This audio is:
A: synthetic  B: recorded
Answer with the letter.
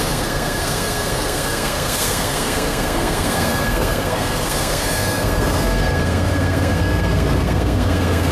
A